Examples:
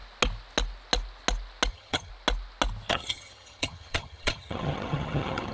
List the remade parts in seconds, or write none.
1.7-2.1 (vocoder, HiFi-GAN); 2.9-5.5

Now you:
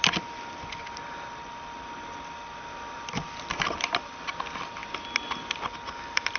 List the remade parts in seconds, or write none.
none

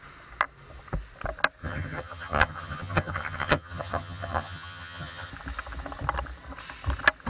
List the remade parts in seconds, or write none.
1.6-5.3 (vocoder, HiFi-GAN)

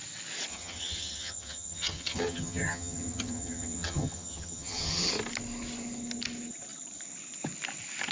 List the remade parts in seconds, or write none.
0.5-5.1 (vocoder, HiFi-GAN)

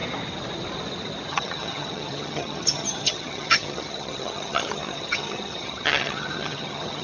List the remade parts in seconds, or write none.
1.3-7.0 (vocoder, HiFi-GAN)